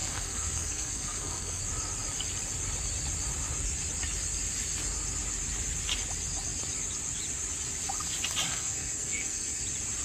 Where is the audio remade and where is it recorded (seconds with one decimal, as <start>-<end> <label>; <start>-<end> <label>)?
0.0-1.6 remade; 1.6-8.5 recorded; 8.5-9.6 remade; 9.6-10.0 recorded